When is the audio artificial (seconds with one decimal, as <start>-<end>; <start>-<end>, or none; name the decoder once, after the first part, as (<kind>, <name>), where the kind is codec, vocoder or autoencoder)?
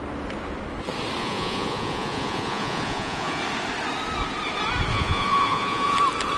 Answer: 1.2-3.4 (vocoder, Vocos); 4.9-6.0